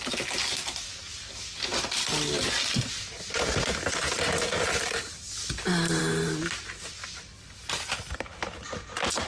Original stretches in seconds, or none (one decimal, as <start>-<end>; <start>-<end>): 0.0-9.3